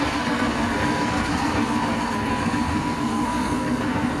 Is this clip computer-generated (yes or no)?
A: yes